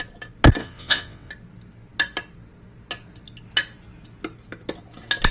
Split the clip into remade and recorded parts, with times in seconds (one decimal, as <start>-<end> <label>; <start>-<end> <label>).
0.0-0.6 recorded; 0.6-1.3 remade; 1.3-5.3 recorded